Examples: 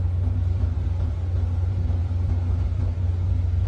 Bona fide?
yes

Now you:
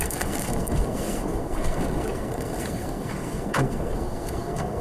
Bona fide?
no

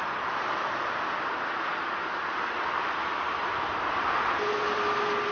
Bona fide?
yes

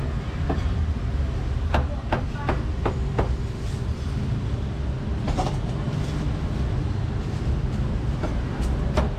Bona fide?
yes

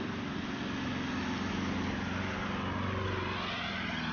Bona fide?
yes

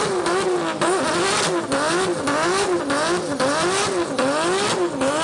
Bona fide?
yes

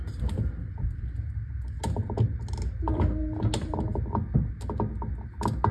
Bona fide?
yes